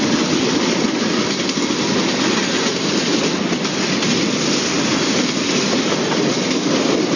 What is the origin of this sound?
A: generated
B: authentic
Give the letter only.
B